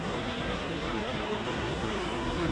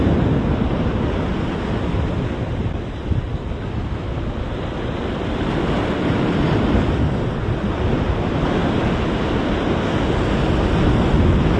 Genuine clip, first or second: second